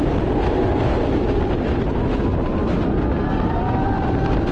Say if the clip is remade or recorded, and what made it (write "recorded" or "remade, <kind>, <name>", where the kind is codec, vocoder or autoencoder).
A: recorded